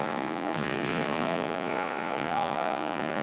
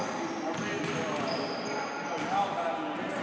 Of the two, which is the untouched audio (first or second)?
second